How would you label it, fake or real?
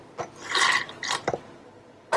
real